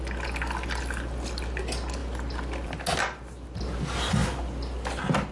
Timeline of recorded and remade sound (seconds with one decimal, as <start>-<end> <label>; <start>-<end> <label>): 0.0-5.3 recorded